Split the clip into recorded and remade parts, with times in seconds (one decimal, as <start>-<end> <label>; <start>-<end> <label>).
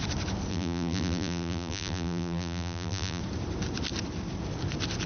0.0-0.5 recorded; 0.5-3.2 remade; 3.2-5.1 recorded